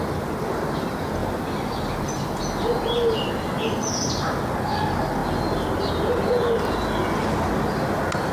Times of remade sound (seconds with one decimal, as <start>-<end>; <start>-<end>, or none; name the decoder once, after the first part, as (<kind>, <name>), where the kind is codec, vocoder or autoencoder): none